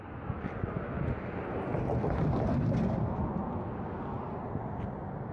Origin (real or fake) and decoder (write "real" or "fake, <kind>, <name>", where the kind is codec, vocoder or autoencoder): real